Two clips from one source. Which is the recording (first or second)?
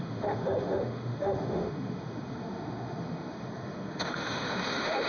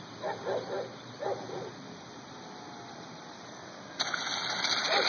second